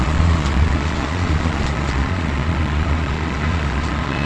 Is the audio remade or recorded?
remade